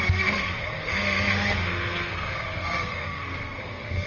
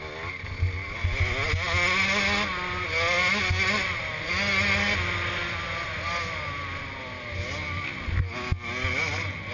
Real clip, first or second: second